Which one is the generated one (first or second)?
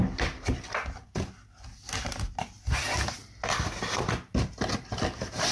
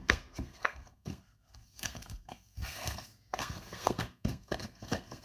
second